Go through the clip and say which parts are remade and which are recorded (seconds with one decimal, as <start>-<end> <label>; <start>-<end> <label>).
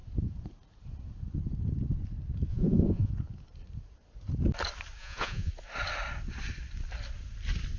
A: 0.0-2.5 recorded; 2.5-3.1 remade; 3.1-5.0 recorded; 5.0-5.5 remade; 5.5-7.8 recorded